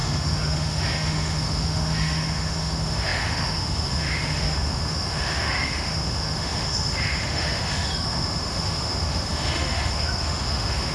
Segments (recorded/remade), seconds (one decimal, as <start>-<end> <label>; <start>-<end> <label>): 0.0-10.9 remade